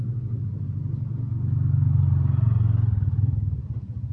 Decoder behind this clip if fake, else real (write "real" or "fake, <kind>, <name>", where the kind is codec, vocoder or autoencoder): real